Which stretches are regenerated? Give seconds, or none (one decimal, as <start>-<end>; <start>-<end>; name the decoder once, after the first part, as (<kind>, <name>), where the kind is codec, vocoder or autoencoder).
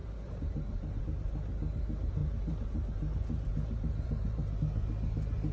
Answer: 0.0-1.0 (vocoder, BigVGAN v2); 2.2-4.6